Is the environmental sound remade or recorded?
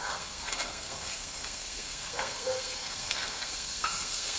remade